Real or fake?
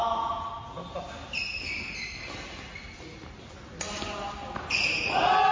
real